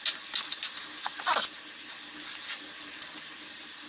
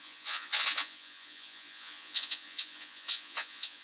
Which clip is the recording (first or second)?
first